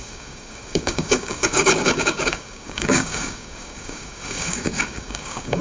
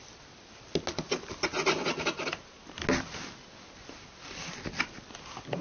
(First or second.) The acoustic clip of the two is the second